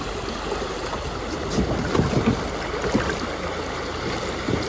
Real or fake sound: real